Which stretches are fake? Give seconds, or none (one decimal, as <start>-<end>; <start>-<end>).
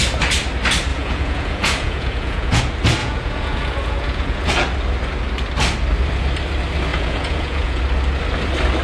0.9-2.6; 3.0-4.5; 6.9-7.8